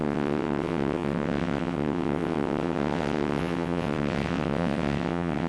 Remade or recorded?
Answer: remade